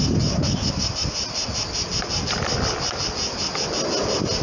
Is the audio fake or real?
real